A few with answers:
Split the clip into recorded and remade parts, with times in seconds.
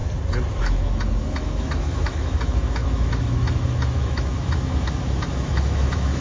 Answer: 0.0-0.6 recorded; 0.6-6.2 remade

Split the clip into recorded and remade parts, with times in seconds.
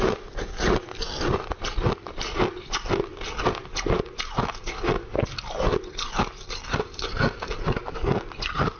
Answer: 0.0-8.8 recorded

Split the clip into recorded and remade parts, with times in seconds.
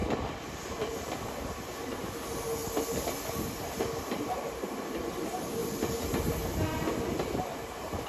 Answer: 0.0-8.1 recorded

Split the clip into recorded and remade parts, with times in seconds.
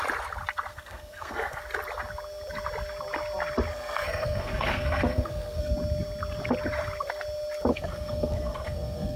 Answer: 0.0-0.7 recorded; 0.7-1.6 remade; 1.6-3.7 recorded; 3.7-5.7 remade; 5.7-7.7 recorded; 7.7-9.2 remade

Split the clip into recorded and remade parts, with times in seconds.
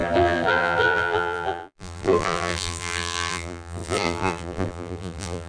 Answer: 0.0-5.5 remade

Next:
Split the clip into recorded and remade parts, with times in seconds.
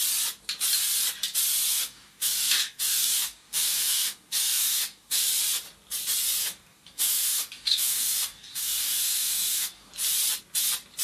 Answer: 0.0-1.7 recorded; 1.7-5.3 remade; 5.3-6.4 recorded; 6.4-9.9 remade; 9.9-11.0 recorded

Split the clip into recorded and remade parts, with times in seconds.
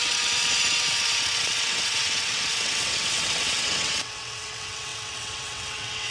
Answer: 0.0-6.1 remade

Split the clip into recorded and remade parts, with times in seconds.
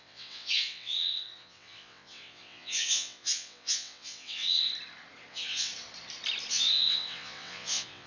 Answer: 0.0-4.7 remade; 4.7-5.3 recorded; 5.3-5.7 remade; 5.7-6.5 recorded; 6.5-8.1 remade